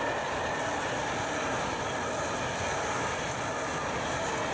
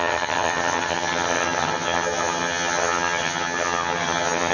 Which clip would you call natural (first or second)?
first